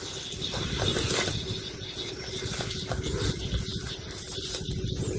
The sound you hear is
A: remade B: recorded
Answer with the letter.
B